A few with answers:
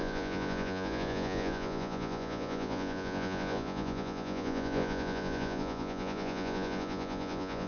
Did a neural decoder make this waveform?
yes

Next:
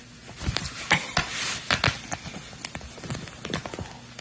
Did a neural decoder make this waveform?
no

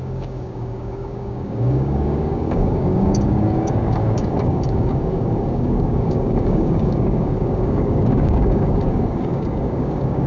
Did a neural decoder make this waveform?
yes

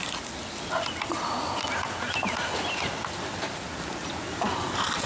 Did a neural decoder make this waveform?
no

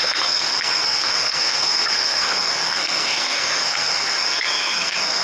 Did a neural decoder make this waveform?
yes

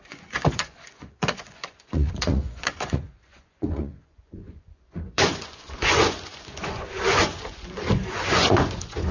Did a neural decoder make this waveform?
yes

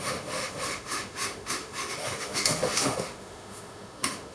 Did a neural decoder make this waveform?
yes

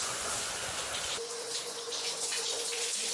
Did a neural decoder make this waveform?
yes